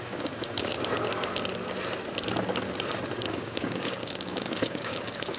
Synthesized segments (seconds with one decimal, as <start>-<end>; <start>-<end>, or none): 0.0-0.7; 3.3-5.4

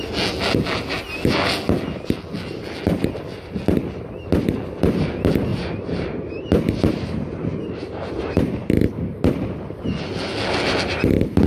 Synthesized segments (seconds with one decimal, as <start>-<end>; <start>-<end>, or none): 5.5-9.2

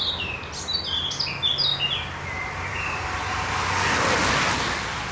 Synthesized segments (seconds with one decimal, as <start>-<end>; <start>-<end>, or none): 2.7-3.5

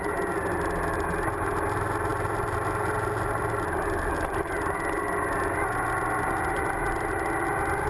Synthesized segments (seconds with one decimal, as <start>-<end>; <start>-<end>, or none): none

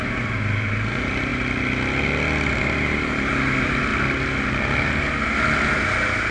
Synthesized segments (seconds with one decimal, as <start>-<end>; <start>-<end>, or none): 0.0-1.3; 2.5-3.9

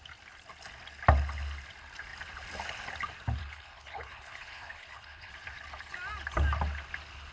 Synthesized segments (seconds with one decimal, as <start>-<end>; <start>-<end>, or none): 3.4-5.3

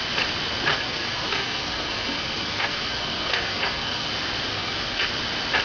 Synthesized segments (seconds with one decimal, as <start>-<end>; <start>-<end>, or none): 0.7-4.1; 4.5-5.1

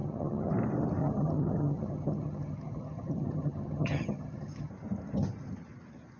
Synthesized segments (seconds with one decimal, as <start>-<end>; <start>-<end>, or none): 0.0-0.5; 1.0-4.7